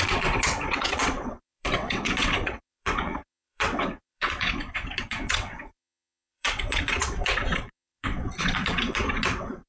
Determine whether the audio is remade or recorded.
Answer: remade